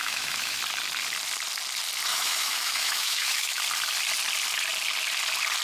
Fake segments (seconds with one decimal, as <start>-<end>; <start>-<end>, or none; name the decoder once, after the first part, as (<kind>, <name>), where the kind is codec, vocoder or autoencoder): 0.0-0.6 (autoencoder, DAC-VAE); 2.1-3.6